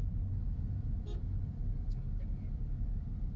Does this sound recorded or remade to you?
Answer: recorded